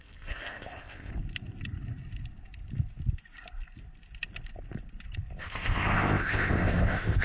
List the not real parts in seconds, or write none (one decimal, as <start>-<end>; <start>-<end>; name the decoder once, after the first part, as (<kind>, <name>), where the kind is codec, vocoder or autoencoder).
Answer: 0.0-1.1 (codec, ZipCodec); 5.4-7.2